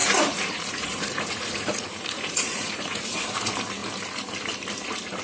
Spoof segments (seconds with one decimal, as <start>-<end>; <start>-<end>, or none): 0.0-3.1